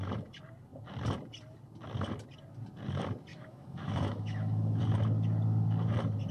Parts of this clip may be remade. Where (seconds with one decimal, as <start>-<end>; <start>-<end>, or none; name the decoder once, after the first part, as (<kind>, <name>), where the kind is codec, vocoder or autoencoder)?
3.3-4.8 (autoencoder, DAC-VAE)